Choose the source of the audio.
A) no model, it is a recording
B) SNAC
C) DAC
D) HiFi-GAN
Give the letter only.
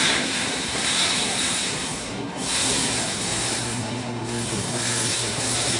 B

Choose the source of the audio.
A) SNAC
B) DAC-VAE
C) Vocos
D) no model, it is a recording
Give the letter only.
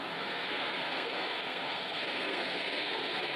A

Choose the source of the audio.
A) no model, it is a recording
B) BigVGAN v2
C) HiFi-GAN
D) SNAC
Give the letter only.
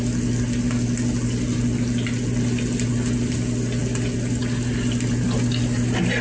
A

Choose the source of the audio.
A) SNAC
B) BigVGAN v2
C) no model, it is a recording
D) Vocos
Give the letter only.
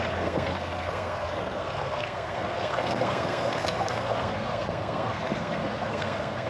A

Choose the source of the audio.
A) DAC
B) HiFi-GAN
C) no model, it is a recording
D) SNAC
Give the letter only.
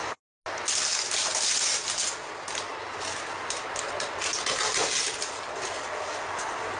C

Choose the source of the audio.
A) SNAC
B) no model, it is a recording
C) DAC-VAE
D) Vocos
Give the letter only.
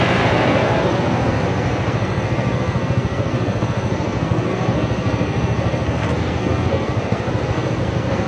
A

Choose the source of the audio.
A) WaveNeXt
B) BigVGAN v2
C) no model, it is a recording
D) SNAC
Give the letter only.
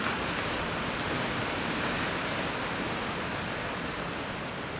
C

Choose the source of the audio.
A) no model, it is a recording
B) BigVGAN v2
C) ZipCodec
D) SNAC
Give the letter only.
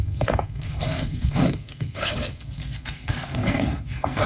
D